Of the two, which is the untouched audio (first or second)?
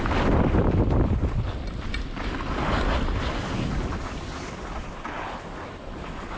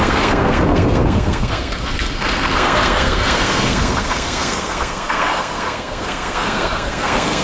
first